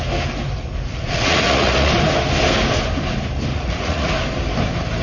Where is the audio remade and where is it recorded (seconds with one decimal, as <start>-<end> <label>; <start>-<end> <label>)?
0.0-0.9 recorded; 0.9-1.9 remade; 1.9-3.5 recorded; 3.5-4.1 remade; 4.1-5.0 recorded